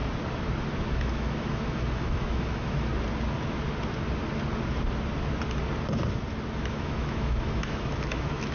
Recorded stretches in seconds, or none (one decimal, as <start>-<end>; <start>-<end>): 0.0-0.9; 2.9-6.7